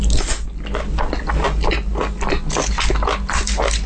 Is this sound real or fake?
real